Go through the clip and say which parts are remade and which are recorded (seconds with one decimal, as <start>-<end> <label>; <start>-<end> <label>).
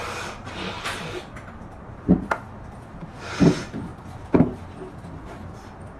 0.0-6.0 recorded